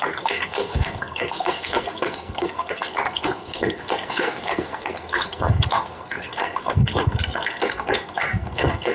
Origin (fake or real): fake